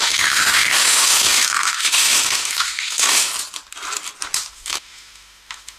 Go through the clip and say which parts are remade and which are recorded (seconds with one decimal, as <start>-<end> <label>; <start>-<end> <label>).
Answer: 0.0-3.3 remade; 3.3-4.5 recorded; 4.5-5.8 remade